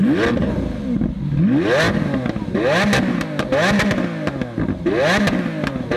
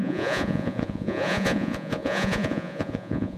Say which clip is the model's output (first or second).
second